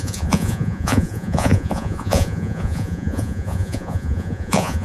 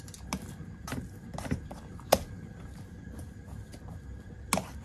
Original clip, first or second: second